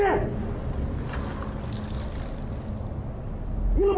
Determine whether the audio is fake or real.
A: real